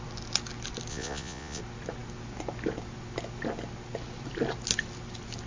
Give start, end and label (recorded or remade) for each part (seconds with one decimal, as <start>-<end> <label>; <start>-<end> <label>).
0.0-0.9 recorded; 0.9-1.6 remade; 1.6-5.5 recorded

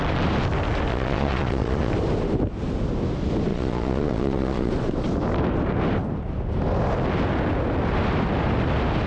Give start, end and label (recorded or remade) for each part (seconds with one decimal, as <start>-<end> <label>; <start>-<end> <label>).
0.0-0.9 recorded; 0.9-1.9 remade; 1.9-3.5 recorded; 3.5-4.7 remade; 4.7-9.1 recorded